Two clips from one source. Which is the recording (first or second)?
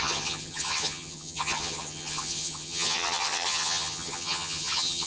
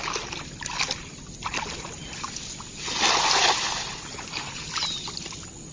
second